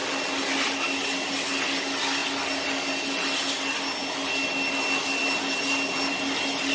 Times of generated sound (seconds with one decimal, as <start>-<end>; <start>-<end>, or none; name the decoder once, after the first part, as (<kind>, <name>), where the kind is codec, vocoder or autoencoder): none